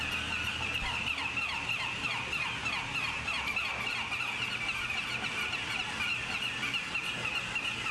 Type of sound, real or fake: real